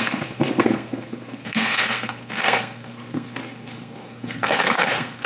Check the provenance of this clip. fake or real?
fake